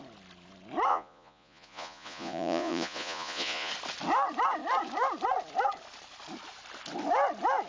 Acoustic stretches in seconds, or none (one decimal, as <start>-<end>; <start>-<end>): 0.0-0.9; 3.7-7.7